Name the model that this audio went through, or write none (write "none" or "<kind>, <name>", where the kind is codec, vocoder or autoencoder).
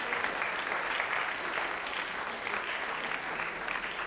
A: none